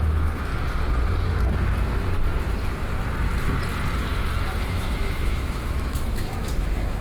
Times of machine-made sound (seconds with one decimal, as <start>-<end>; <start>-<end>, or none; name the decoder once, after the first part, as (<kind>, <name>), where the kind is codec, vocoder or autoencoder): 0.0-0.5 (autoencoder, DAC-VAE); 4.7-7.0